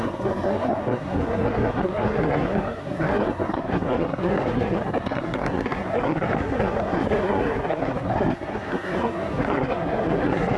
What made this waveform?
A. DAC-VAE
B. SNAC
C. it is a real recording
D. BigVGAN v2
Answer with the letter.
B